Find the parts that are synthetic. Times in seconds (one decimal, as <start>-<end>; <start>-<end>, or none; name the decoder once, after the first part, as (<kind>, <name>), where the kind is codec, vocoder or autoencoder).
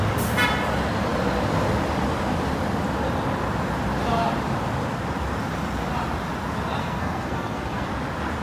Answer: 6.8-7.9 (codec, SNAC)